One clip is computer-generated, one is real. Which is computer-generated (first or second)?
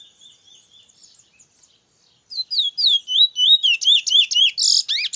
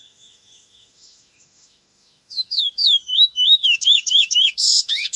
second